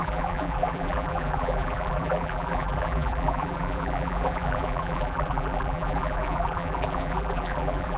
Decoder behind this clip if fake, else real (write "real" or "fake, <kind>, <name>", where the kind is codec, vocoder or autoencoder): fake, vocoder, BigVGAN v2